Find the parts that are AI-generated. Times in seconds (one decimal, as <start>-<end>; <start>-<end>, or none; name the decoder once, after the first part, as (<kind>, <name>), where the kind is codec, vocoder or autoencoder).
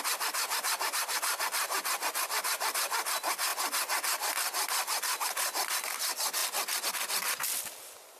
none